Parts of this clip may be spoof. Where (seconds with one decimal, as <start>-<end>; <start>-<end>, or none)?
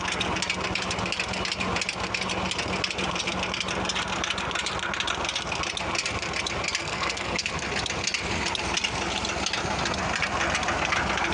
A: 6.8-7.5